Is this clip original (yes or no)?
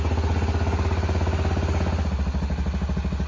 yes